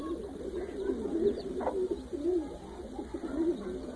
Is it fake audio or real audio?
real